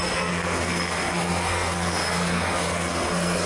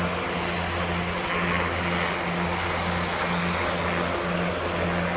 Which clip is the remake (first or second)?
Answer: first